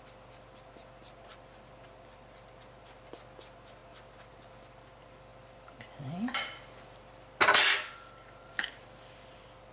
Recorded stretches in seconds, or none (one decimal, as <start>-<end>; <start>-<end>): 0.0-9.7